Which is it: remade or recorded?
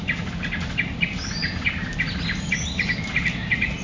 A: recorded